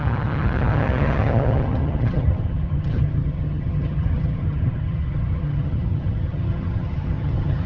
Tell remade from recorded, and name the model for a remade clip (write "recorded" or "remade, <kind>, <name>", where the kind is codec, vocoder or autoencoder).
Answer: remade, vocoder, HiFi-GAN